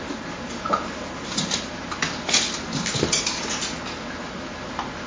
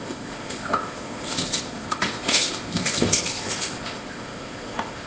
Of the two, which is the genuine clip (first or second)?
first